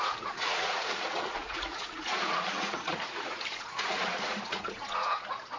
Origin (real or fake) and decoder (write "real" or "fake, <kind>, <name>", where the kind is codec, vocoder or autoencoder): fake, vocoder, Vocos